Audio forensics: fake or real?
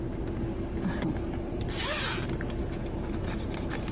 real